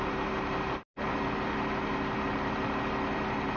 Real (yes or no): yes